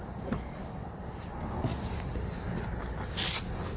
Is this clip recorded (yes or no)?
yes